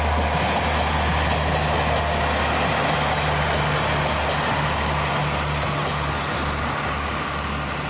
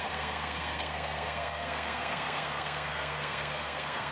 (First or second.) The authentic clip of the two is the first